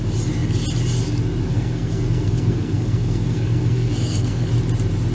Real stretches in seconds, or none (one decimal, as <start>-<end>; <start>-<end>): 0.0-1.5; 4.5-5.1